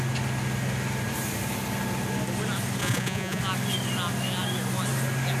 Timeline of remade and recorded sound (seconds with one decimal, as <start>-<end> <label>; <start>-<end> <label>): 0.0-2.8 recorded; 2.8-3.4 remade; 3.4-5.4 recorded